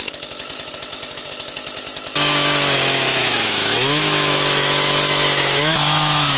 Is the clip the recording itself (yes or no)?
no